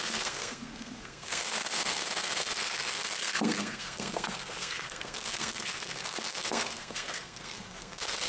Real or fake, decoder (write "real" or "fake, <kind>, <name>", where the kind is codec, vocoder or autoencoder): fake, codec, SNAC